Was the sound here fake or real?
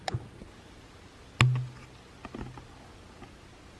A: real